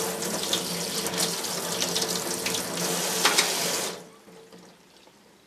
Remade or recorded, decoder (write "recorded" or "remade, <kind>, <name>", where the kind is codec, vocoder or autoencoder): recorded